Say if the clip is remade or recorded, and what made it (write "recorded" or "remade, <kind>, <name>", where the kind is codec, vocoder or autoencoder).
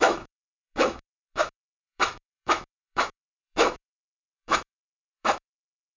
remade, autoencoder, DAC-VAE